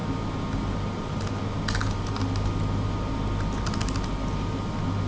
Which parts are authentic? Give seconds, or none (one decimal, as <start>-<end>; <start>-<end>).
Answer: 0.0-5.1